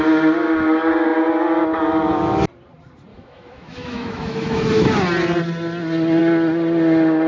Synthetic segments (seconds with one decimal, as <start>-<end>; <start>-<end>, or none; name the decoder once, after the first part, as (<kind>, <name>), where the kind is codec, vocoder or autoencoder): 3.1-4.9 (autoencoder, DAC-VAE)

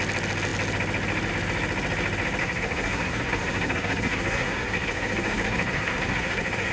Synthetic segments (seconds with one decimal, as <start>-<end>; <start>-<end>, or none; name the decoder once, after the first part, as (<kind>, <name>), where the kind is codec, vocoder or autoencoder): 2.4-6.7 (codec, SNAC)

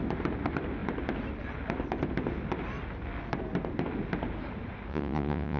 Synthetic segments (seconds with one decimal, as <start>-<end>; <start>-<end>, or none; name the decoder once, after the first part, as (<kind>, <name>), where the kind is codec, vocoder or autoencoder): 4.9-5.6 (vocoder, Vocos)